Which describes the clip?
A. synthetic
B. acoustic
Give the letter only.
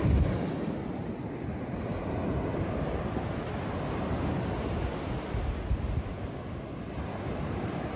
B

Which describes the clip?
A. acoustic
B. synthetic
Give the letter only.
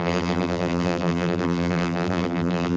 B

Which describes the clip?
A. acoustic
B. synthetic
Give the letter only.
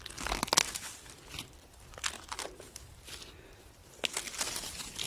A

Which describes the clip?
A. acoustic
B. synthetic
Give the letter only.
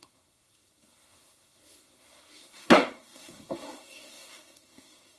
B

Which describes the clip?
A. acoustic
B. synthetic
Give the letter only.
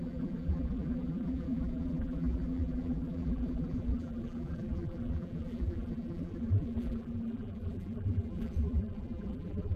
B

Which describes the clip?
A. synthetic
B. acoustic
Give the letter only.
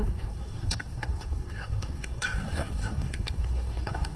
A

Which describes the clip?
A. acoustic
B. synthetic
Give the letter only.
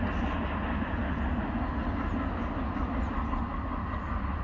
A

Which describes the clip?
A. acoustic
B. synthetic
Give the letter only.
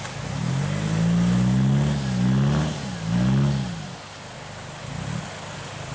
A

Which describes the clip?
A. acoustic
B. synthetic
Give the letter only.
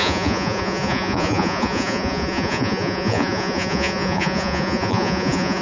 B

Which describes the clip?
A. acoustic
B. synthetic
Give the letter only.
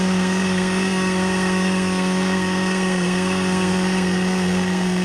B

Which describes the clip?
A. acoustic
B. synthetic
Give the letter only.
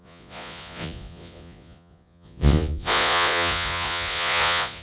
B